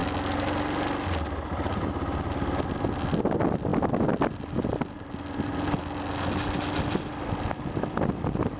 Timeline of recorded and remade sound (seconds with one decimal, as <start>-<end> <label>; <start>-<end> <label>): 0.0-8.6 recorded